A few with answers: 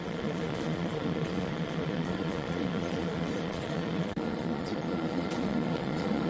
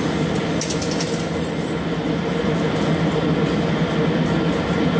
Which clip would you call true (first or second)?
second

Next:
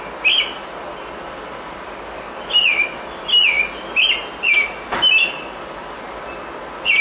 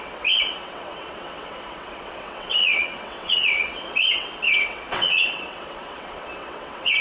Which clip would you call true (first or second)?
first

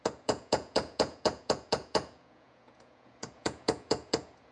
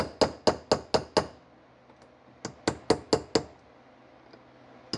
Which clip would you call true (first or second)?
second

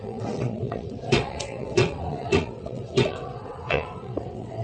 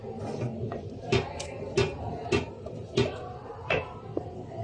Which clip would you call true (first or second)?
second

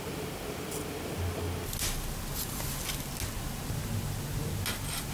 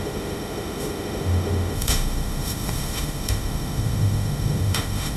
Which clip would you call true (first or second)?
first